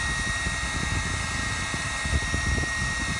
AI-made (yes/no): no